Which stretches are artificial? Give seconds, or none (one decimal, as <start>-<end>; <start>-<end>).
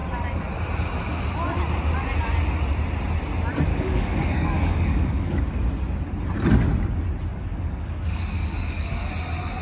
3.7-5.4; 7.3-9.1